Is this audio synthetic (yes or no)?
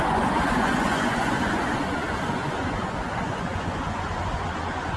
yes